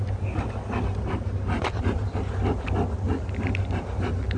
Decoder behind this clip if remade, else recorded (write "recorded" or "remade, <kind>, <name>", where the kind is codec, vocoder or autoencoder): recorded